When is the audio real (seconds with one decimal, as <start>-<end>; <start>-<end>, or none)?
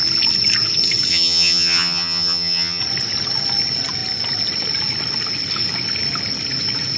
0.0-1.1; 2.8-7.0